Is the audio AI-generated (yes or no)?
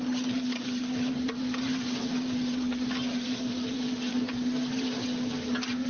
yes